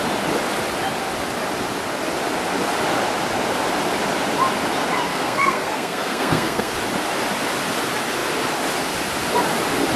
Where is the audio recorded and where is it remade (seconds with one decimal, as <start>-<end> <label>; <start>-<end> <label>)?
0.0-5.1 recorded; 5.1-6.7 remade; 6.7-10.0 recorded